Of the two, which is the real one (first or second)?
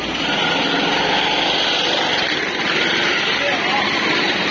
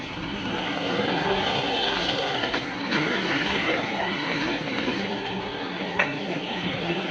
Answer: first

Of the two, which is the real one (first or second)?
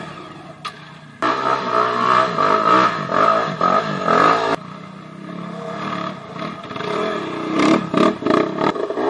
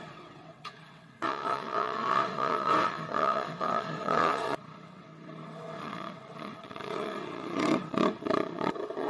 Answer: first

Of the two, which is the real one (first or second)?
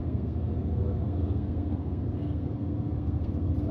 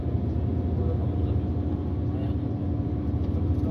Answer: second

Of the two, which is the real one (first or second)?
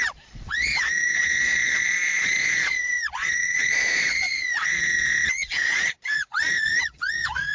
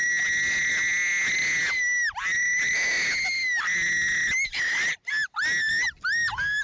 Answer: second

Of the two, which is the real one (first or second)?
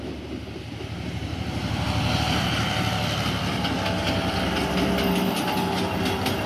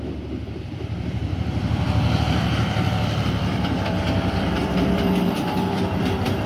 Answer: first